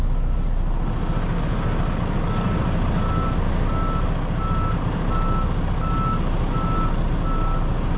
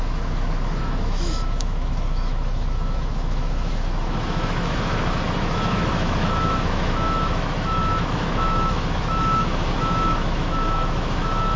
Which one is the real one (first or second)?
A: first